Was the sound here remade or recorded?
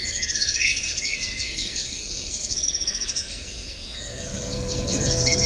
remade